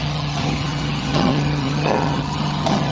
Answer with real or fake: fake